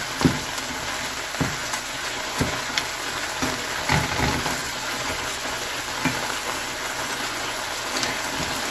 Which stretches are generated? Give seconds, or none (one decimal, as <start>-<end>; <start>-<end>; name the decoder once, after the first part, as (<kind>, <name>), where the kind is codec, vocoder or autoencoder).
1.6-2.7 (vocoder, Vocos); 4.6-5.8; 6.6-7.6